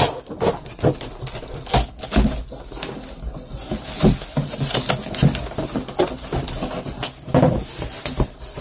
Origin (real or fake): real